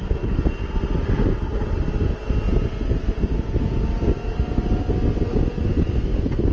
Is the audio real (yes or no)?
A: yes